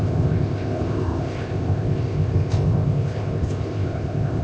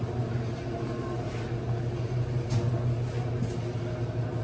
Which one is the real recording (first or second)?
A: second